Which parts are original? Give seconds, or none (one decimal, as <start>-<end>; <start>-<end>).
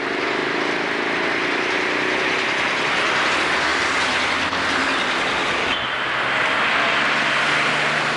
0.0-8.2